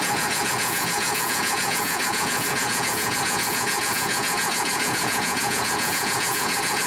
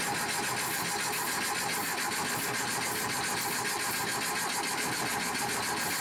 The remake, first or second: first